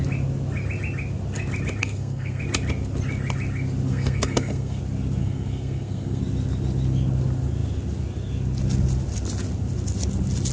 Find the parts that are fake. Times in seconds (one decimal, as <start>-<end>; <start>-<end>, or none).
1.8-2.4; 3.9-4.8; 5.2-6.2